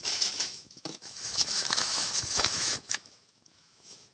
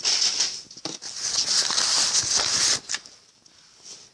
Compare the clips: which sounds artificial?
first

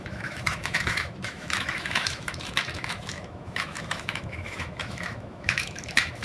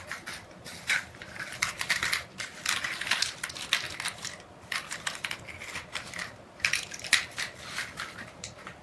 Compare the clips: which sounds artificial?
first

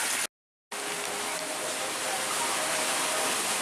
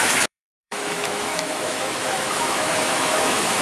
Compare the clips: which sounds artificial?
second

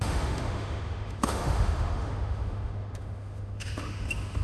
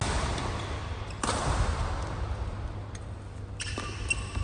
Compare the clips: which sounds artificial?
first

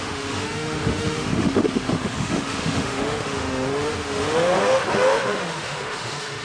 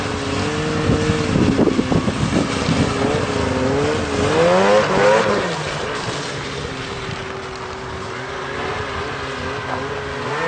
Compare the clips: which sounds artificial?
first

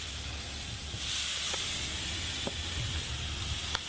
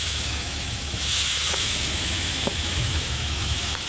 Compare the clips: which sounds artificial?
second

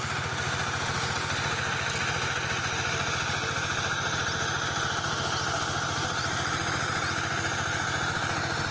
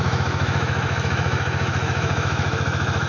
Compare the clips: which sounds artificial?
second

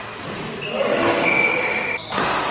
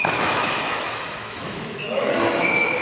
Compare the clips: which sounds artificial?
second